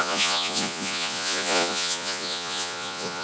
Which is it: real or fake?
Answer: fake